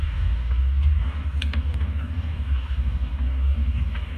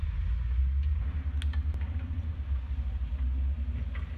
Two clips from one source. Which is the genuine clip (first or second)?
second